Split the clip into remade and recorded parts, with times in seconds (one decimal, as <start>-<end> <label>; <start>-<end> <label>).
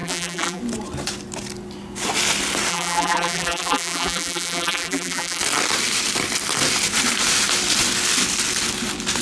0.0-0.6 remade; 0.6-2.7 recorded; 2.7-5.4 remade; 5.4-9.2 recorded